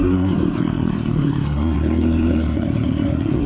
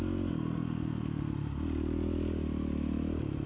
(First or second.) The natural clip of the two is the second